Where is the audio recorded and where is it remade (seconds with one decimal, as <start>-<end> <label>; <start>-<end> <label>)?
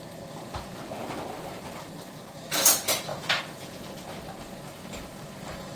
0.0-3.1 recorded; 3.1-3.9 remade; 3.9-5.8 recorded